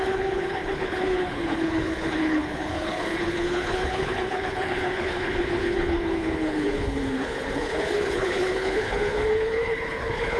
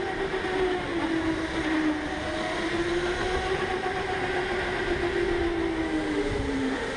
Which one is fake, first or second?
first